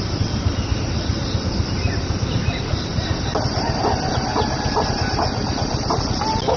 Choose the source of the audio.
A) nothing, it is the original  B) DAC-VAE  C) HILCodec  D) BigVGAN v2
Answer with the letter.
D